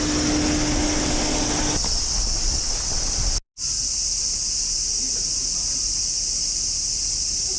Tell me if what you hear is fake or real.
real